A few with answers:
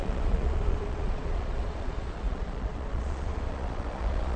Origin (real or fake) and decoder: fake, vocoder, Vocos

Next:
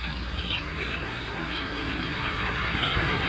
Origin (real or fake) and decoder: fake, codec, SNAC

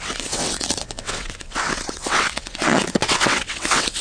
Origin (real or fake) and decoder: fake, vocoder, WaveNeXt